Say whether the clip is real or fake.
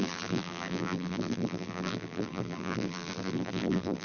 fake